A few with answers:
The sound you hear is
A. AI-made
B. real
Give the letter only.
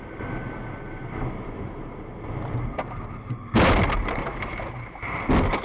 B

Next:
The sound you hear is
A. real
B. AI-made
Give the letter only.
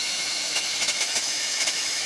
B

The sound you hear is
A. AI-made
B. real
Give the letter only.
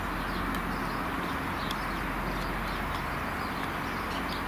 B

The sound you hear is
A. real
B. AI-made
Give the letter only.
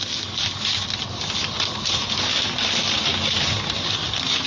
A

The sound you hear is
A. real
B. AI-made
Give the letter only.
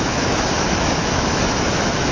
B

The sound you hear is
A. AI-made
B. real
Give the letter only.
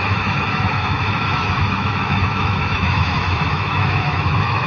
A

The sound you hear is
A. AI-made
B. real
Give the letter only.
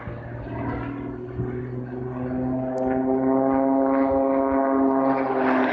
B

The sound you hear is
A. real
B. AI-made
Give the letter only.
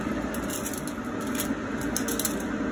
A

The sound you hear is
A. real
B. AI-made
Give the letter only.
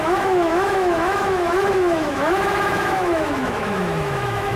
B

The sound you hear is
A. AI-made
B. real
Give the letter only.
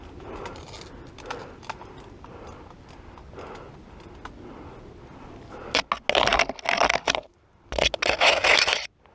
B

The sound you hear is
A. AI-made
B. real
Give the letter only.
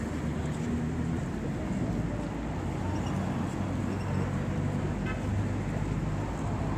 B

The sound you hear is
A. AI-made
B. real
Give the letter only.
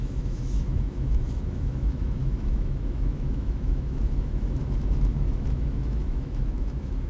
A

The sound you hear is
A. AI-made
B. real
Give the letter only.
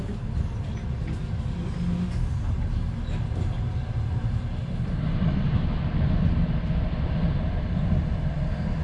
B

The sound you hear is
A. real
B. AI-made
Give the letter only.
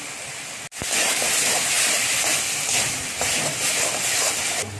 A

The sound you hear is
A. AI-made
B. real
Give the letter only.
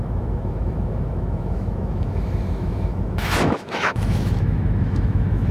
A